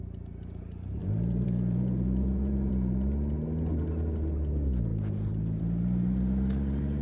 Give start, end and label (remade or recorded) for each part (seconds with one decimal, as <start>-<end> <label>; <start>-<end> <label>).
0.0-1.0 recorded; 1.0-2.7 remade; 2.7-4.9 recorded; 4.9-5.6 remade; 5.6-7.0 recorded